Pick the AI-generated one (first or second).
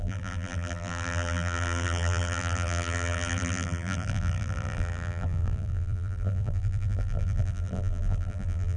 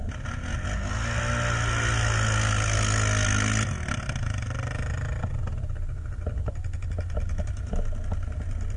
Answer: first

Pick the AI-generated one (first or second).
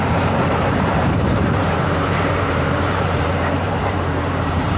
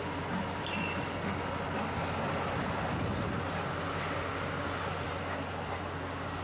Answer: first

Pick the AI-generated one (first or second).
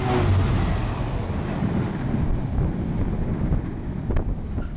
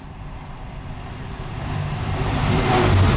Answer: second